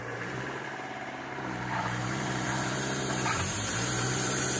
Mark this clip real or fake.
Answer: fake